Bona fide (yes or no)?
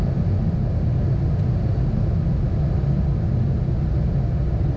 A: yes